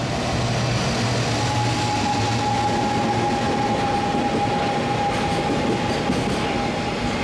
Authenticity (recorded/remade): recorded